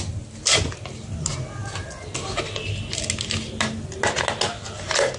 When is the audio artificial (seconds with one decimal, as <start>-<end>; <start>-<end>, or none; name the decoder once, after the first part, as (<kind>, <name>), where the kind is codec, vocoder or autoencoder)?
none